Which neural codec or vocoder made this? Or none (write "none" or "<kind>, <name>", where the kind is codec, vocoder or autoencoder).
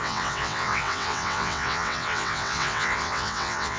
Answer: vocoder, WaveNeXt